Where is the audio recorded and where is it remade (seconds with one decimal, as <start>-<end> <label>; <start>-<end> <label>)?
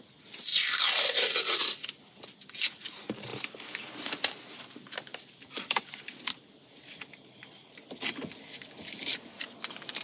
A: 0.0-5.1 recorded; 5.1-6.0 remade; 6.0-10.0 recorded